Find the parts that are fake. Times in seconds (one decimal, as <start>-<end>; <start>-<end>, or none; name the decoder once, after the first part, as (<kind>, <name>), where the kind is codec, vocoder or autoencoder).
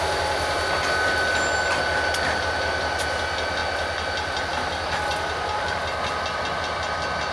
5.1-5.8 (vocoder, BigVGAN v2)